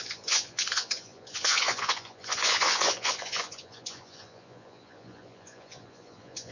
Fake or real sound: fake